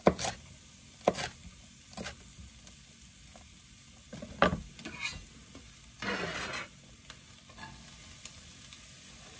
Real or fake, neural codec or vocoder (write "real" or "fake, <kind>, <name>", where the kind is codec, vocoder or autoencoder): real